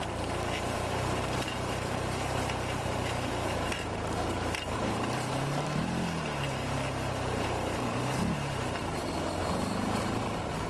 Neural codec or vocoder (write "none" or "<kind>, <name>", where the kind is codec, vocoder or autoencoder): vocoder, BigVGAN v2